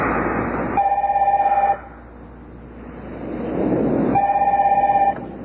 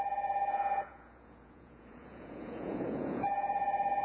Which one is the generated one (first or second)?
second